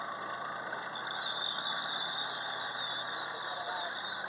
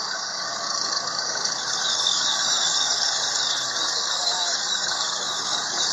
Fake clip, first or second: second